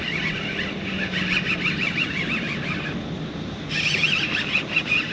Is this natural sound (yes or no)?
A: yes